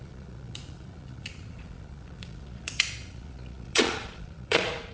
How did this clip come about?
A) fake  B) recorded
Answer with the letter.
A